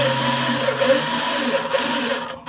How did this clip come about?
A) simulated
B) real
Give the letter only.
B